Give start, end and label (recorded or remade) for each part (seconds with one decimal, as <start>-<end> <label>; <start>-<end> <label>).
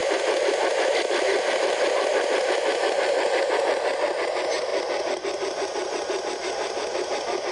0.0-7.5 recorded